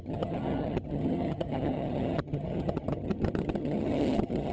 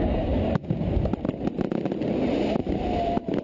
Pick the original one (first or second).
second